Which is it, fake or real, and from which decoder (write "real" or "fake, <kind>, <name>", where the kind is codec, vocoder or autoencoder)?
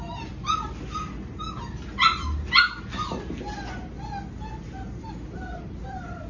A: real